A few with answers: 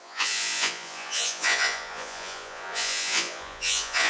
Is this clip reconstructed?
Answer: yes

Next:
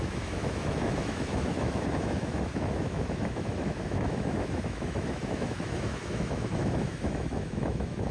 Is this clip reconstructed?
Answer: yes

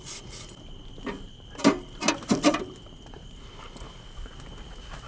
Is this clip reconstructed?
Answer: no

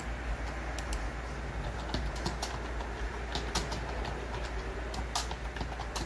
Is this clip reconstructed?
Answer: no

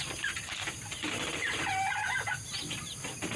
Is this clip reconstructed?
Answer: no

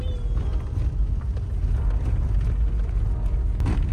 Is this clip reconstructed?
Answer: no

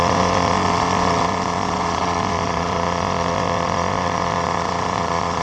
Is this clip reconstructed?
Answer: yes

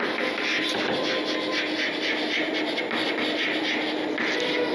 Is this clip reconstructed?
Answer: no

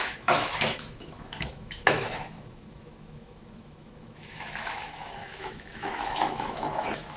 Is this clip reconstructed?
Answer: yes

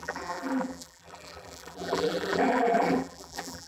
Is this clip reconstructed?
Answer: yes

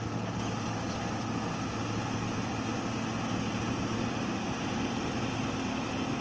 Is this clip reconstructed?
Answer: no